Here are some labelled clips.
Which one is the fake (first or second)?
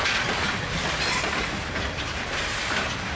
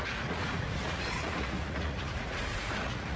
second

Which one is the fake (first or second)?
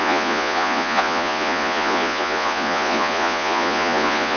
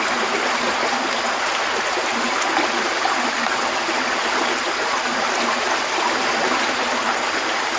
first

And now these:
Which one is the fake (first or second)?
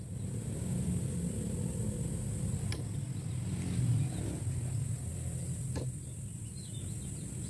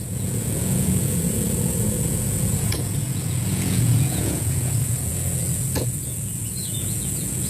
second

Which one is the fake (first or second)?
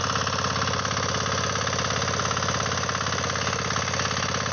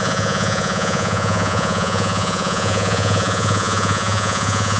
second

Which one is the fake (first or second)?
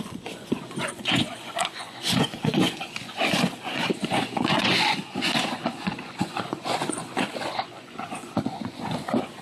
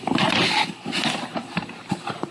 first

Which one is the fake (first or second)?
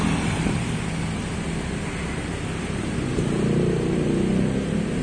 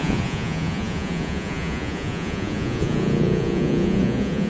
second